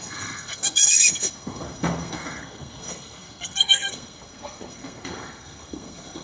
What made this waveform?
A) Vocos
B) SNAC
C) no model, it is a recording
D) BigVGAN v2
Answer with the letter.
B